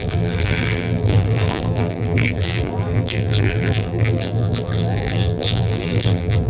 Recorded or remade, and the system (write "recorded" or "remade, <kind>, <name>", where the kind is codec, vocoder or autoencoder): remade, vocoder, BigVGAN v2